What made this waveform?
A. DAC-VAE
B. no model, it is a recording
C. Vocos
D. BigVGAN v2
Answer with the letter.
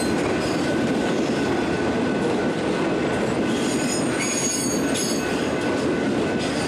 B